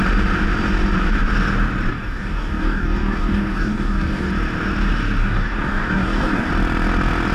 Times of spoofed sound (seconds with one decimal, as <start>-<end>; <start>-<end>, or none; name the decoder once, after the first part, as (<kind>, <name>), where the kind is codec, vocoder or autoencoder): 1.9-4.3 (codec, DAC); 5.2-6.5